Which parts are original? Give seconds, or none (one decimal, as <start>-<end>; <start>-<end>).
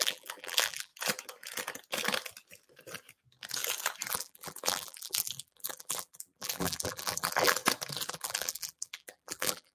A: 0.9-4.1; 7.6-8.1